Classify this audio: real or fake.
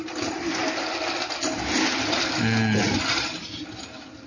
real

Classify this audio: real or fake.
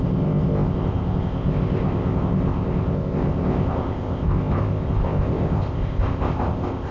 fake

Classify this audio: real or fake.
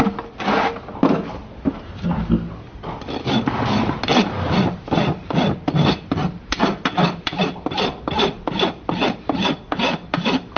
real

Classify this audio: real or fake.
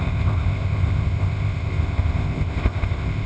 fake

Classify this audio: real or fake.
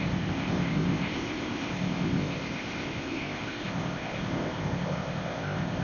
fake